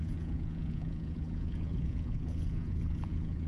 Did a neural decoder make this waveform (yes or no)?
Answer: yes